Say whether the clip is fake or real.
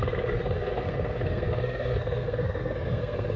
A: fake